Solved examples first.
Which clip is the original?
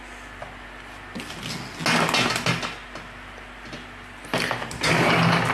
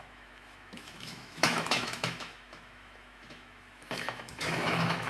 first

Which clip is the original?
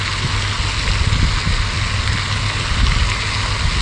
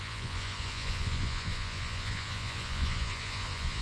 first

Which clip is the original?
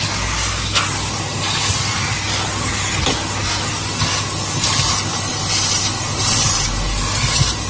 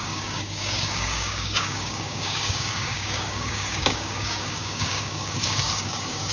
first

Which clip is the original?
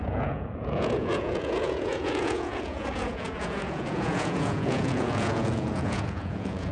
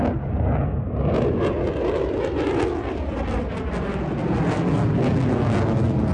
second